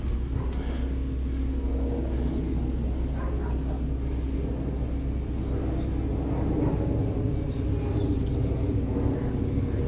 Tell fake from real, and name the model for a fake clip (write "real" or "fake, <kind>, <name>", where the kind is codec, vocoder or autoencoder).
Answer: real